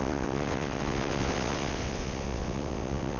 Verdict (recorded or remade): remade